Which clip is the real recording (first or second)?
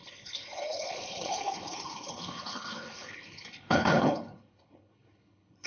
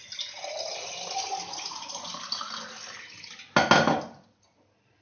second